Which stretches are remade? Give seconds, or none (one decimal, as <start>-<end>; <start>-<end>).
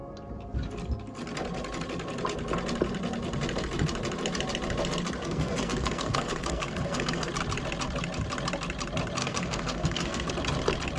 5.2-7.3; 9.2-10.3